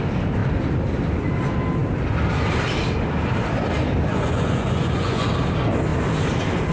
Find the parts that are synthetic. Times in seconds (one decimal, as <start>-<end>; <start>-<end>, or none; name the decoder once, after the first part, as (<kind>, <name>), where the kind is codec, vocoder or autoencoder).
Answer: 4.1-5.3 (vocoder, Vocos)